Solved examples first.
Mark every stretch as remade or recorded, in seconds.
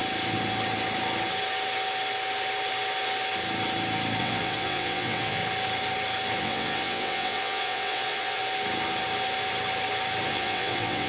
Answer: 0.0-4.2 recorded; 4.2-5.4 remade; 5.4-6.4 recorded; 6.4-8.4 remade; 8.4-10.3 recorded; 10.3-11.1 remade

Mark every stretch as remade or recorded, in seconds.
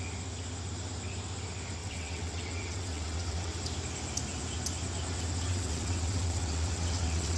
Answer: 0.0-1.8 recorded; 1.8-3.6 remade; 3.6-5.5 recorded; 5.5-7.4 remade